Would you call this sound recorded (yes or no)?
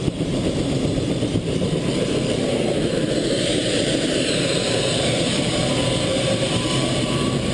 no